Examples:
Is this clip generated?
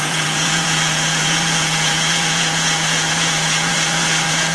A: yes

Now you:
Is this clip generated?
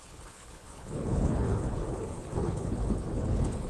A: yes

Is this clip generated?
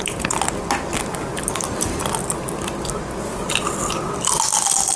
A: no